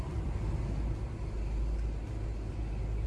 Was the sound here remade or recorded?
recorded